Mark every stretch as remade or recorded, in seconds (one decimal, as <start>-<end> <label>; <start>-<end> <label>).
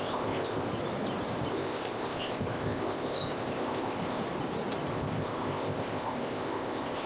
0.0-0.7 remade; 0.7-1.5 recorded; 1.5-4.2 remade; 4.2-4.9 recorded; 4.9-7.1 remade